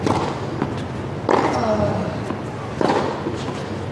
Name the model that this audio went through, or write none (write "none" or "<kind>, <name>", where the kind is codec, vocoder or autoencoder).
none